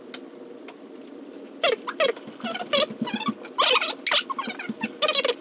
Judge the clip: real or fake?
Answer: real